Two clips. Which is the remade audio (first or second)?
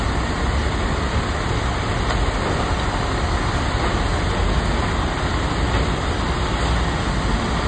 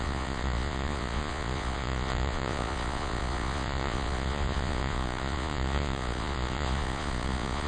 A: second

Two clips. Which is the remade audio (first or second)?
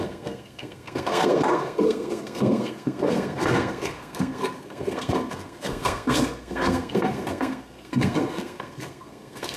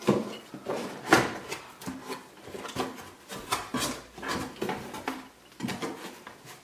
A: first